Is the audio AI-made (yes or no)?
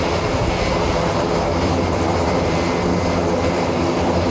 no